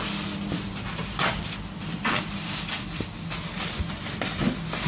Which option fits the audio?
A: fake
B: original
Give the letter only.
B